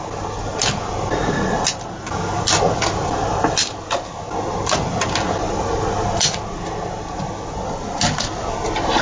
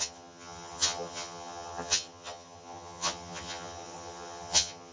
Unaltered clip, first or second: first